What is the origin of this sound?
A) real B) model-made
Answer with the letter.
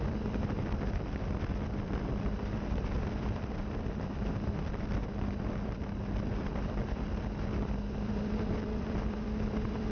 B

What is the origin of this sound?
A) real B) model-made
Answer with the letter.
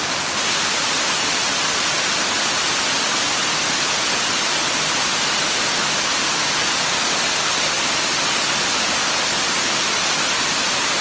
A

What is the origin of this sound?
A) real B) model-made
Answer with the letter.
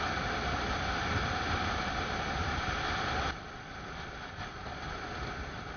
A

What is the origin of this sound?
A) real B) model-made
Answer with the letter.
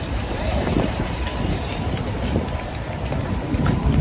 B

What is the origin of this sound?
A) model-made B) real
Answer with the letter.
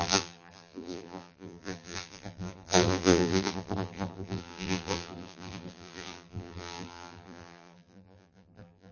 A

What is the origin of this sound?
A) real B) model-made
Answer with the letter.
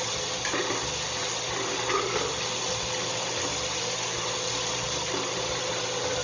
A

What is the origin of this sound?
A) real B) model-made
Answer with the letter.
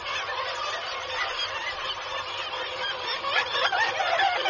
B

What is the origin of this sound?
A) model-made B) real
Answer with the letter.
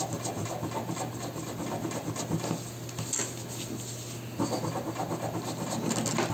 B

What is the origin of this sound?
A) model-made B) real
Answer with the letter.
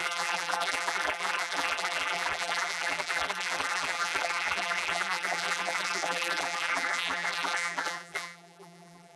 A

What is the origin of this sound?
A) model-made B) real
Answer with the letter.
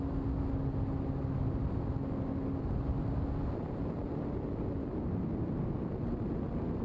B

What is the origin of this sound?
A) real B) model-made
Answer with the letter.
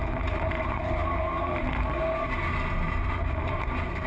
B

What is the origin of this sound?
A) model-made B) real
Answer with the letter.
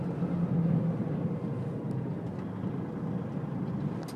B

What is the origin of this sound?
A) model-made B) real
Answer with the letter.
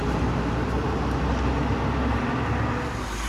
B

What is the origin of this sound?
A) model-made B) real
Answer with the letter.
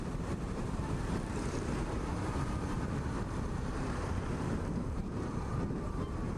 A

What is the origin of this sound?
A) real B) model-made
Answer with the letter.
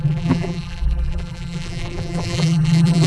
B